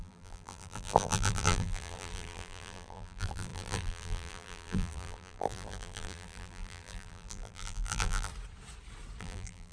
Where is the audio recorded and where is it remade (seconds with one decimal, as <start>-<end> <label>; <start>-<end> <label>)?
0.0-8.3 remade; 8.3-9.2 recorded; 9.2-9.7 remade